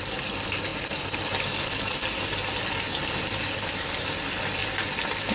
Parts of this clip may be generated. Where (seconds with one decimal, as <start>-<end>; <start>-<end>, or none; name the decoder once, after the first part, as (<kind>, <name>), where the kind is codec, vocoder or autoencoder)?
4.6-5.3 (vocoder, BigVGAN v2)